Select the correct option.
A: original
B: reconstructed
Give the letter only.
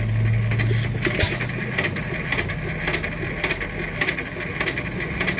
A